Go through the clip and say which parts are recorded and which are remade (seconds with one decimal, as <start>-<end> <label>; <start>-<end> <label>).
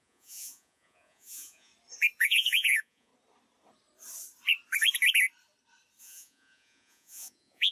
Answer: 0.0-1.7 remade; 1.7-2.2 recorded; 2.2-3.1 remade; 3.1-6.0 recorded; 6.0-7.7 remade